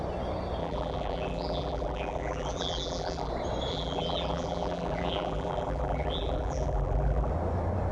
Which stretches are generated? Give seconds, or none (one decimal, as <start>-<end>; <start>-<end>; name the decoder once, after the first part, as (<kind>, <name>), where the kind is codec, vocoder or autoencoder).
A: 0.6-3.3 (vocoder, BigVGAN v2); 3.7-7.3